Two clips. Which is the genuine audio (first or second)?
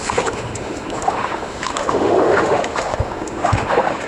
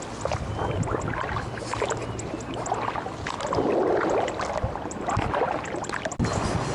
second